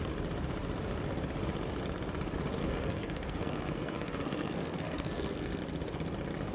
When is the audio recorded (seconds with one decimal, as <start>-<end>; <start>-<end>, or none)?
0.0-2.6; 5.6-6.5

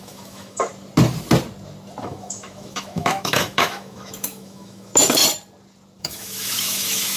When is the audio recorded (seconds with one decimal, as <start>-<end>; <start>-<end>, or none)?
0.7-2.0; 5.2-6.0

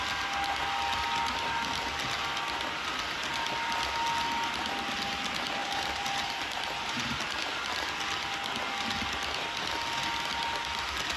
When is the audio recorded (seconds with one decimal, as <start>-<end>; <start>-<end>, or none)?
0.0-5.6; 7.2-11.2

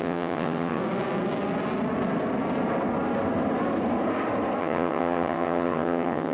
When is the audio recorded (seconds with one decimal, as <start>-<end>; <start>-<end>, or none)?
0.8-4.6

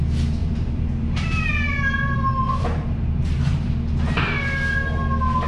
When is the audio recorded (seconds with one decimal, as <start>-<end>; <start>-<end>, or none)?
0.0-0.4; 3.7-5.5

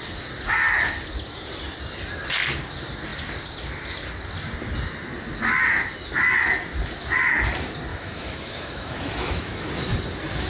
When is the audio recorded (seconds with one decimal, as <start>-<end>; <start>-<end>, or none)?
0.0-7.9; 9.7-10.5

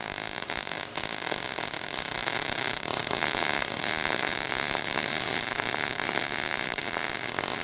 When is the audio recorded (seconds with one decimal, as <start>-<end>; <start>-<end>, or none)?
0.8-2.2; 6.8-7.6